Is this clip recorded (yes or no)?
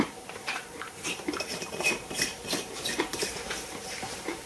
no